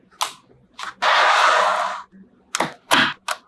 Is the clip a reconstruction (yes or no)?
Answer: no